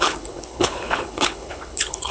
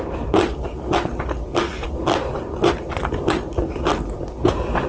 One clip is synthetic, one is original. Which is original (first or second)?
second